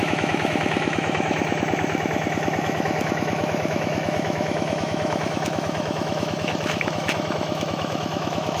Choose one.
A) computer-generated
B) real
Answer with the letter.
A